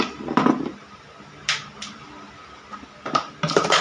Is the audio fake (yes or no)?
no